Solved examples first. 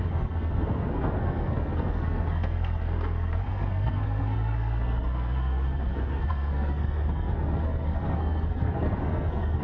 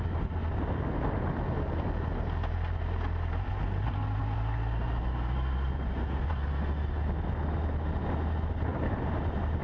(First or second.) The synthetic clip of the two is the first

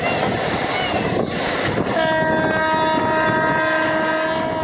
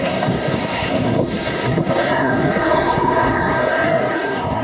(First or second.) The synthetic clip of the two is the second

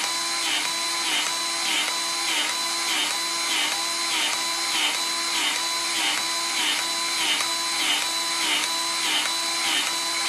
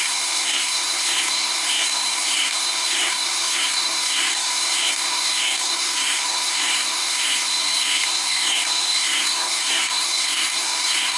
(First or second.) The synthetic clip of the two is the second